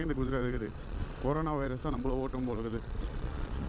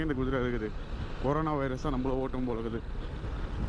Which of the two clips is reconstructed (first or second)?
first